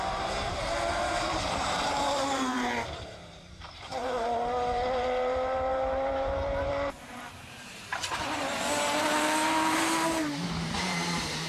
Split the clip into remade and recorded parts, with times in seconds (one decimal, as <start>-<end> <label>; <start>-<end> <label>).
0.0-7.9 remade; 7.9-8.9 recorded; 8.9-11.5 remade